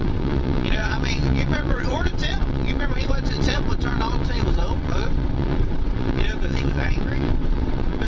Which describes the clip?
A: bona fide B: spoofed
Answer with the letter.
B